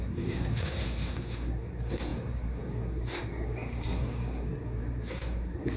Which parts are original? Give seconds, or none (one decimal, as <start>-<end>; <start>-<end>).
none